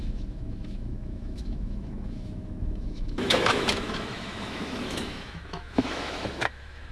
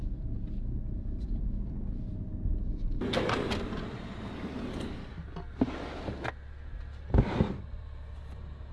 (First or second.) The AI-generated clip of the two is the first